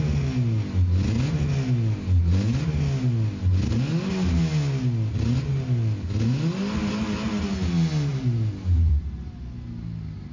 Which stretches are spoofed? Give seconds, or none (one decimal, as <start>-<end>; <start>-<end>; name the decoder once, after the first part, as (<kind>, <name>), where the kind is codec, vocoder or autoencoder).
8.1-9.2 (vocoder, BigVGAN v2)